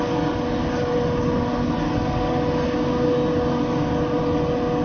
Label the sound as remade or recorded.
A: recorded